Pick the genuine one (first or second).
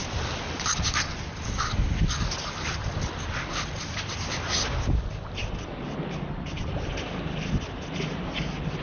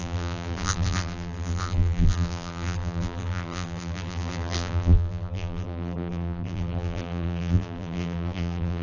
first